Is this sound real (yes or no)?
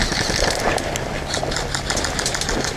yes